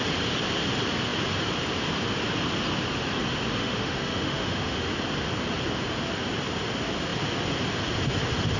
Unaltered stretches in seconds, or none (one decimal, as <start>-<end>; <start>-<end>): 0.0-3.6; 4.9-8.6